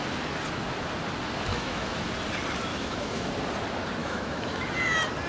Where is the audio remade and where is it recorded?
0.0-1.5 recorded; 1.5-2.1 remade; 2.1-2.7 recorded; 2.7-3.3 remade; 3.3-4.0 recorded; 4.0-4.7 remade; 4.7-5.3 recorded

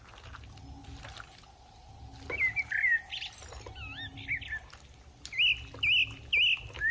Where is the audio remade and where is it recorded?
0.0-6.9 recorded

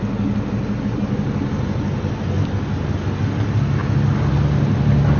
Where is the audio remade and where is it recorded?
0.0-5.2 recorded

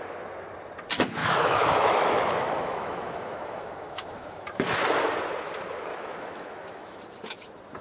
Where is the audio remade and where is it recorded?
0.0-1.2 recorded; 1.2-4.8 remade; 4.8-5.9 recorded; 5.9-7.0 remade; 7.0-7.8 recorded

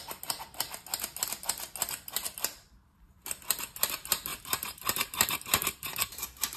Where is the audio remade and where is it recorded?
0.0-4.3 recorded; 4.3-6.6 remade

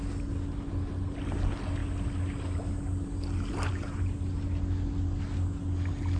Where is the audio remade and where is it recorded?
0.0-6.2 recorded